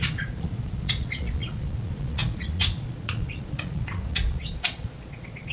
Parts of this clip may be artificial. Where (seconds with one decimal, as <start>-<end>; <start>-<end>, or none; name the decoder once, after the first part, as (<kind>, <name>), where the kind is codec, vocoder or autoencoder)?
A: 0.0-5.5 (vocoder, Vocos)